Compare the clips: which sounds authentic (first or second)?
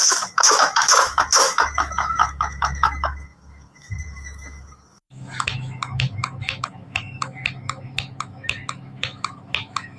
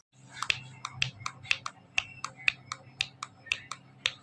second